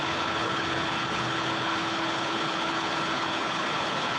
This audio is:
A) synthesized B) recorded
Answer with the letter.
A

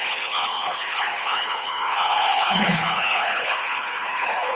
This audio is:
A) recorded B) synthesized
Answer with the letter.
B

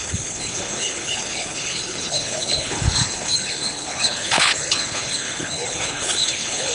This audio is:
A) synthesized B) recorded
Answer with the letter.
A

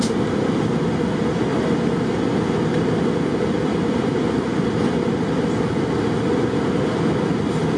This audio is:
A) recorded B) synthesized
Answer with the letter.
A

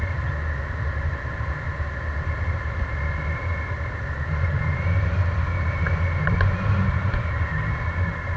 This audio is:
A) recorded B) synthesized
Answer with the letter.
A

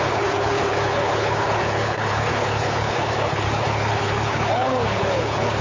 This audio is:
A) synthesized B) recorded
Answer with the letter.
A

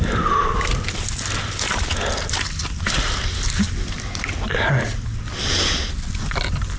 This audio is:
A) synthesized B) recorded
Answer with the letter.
B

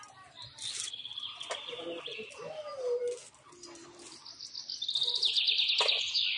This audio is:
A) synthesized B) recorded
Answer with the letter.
B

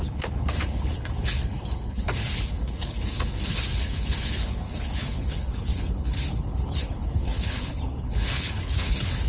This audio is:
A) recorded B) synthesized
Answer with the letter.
B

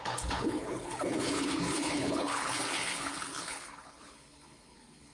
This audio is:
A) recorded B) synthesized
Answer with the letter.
B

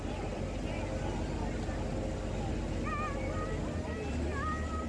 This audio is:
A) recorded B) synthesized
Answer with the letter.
A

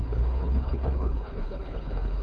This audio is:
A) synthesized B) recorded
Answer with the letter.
A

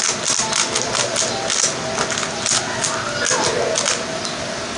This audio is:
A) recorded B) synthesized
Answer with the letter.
A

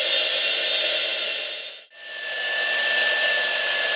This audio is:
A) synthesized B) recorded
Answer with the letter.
B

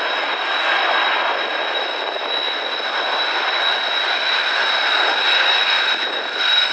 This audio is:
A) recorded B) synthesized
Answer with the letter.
A